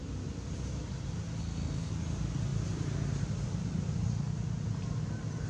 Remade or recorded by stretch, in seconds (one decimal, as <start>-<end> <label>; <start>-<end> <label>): 0.0-1.4 recorded; 1.4-1.9 remade; 1.9-5.5 recorded